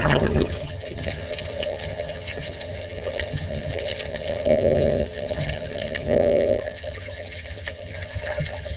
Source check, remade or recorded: remade